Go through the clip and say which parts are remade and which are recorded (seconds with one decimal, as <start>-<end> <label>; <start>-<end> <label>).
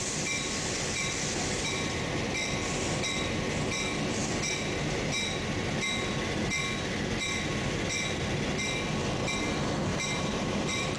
0.0-9.9 recorded; 9.9-11.0 remade